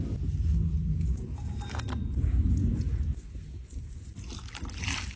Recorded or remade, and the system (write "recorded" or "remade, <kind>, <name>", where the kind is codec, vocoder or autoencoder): recorded